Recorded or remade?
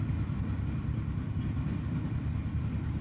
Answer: recorded